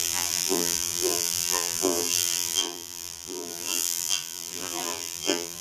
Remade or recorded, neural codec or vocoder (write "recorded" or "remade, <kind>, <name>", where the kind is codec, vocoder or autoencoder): remade, vocoder, BigVGAN v2